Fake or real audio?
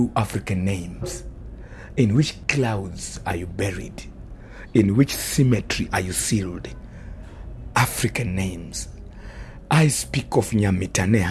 real